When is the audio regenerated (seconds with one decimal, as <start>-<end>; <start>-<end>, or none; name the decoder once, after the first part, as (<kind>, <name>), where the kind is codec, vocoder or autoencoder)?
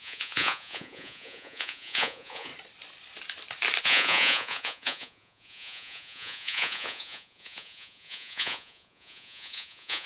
0.0-2.5 (vocoder, Vocos); 3.8-10.1